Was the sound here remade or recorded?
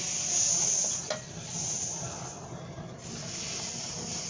recorded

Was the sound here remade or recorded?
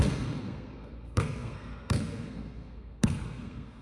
remade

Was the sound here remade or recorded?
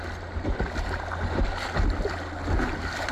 recorded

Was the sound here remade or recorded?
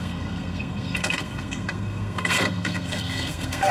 remade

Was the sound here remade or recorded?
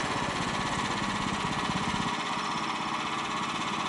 remade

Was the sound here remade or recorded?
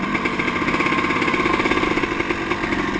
recorded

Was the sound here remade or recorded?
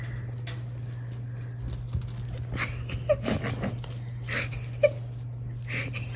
recorded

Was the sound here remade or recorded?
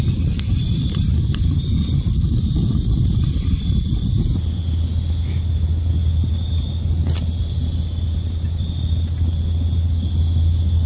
recorded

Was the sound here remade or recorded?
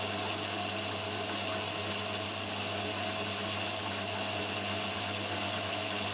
recorded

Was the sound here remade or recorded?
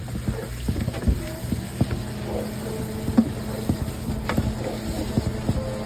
recorded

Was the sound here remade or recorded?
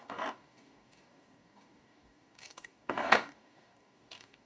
remade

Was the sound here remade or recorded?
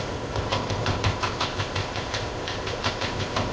remade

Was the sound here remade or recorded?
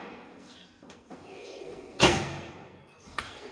remade